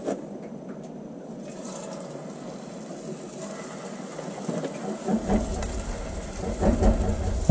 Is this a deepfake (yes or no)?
no